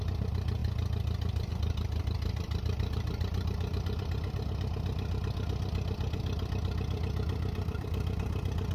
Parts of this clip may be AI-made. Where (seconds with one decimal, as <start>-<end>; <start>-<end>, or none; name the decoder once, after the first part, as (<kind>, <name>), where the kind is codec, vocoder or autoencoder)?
none

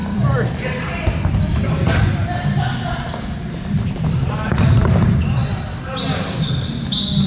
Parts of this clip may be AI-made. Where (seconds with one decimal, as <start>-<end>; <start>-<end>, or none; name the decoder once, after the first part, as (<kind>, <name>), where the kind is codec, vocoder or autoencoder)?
0.0-2.0 (vocoder, BigVGAN v2)

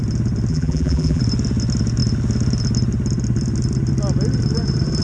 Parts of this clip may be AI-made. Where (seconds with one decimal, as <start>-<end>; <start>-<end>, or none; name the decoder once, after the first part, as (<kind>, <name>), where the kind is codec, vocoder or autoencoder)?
0.5-1.2 (vocoder, BigVGAN v2)

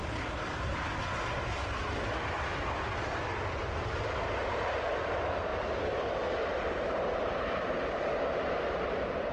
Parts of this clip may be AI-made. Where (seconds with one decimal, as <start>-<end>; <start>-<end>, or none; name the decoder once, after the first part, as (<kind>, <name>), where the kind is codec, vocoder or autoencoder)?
5.0-5.5 (vocoder, BigVGAN v2); 6.0-9.3

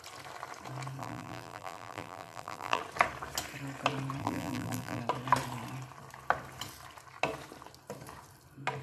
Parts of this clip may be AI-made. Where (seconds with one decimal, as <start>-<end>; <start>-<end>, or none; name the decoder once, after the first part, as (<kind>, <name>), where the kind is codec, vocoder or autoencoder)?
1.0-2.8 (vocoder, BigVGAN v2); 4.2-5.0

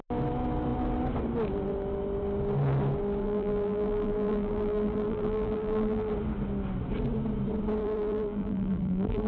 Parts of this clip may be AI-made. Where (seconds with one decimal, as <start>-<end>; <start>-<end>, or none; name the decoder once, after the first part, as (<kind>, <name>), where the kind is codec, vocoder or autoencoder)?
3.2-6.1 (vocoder, BigVGAN v2); 7.8-9.3